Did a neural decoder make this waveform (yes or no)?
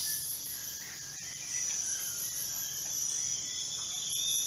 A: no